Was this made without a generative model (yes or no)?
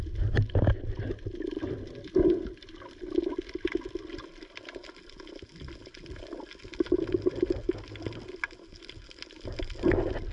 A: yes